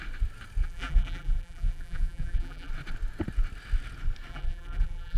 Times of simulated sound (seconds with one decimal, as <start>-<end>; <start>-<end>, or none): 0.6-2.7; 4.3-5.2